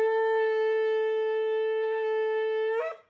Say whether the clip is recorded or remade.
remade